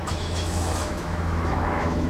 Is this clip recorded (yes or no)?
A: no